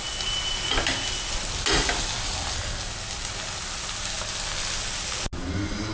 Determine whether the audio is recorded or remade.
recorded